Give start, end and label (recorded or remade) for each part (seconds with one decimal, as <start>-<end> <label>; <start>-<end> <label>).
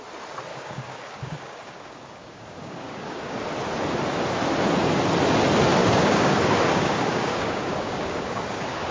0.0-0.5 recorded; 0.5-3.3 remade; 3.3-5.8 recorded; 5.8-8.9 remade